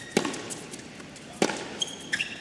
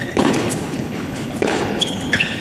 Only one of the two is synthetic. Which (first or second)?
second